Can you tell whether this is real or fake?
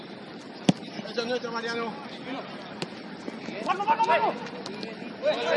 real